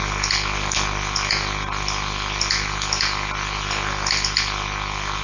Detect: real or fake real